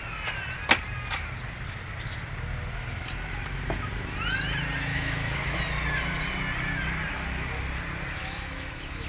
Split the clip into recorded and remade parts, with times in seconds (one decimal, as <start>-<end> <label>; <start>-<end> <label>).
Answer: 0.0-4.9 recorded; 4.9-5.6 remade; 5.6-8.2 recorded; 8.2-9.1 remade